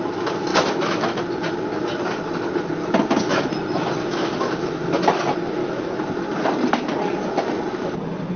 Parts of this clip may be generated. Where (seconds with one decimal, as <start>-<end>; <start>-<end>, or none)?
0.5-1.2; 4.0-4.9; 5.6-6.1